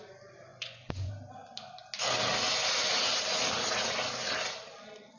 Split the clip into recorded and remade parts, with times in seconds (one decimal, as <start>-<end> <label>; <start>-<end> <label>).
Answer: 0.0-0.5 recorded; 0.5-1.1 remade; 1.1-5.2 recorded